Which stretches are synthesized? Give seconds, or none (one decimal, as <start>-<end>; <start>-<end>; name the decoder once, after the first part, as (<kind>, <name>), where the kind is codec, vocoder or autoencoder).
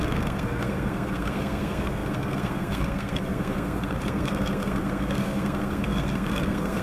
0.0-6.8 (codec, SNAC)